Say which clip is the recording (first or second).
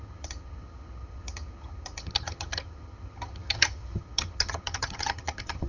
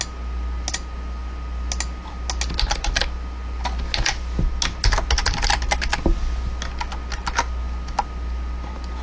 second